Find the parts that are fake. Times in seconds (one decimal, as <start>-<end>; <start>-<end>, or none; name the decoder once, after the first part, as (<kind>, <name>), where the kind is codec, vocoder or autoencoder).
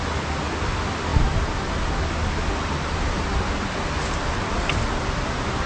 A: none